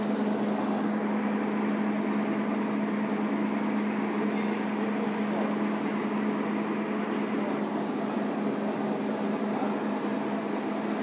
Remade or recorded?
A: recorded